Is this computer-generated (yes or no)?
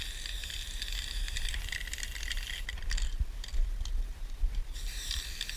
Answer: no